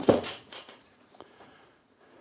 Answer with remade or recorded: remade